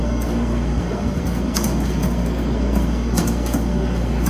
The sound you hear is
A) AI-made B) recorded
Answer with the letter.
A